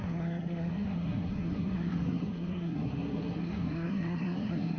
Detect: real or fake fake